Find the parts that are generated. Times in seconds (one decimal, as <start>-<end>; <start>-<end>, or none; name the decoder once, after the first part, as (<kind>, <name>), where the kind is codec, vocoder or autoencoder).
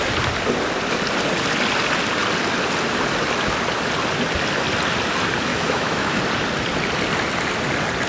5.5-6.2 (autoencoder, DAC-VAE)